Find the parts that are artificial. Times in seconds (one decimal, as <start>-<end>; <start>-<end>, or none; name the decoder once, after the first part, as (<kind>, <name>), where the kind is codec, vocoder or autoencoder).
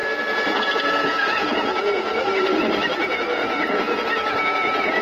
0.6-2.1 (vocoder, Vocos); 3.0-5.0